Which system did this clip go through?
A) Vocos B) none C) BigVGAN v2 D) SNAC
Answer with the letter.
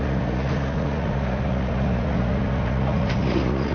A